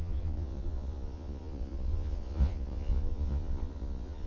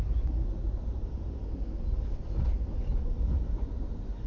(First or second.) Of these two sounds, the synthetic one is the first